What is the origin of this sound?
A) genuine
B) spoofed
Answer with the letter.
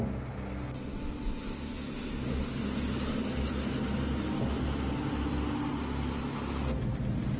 A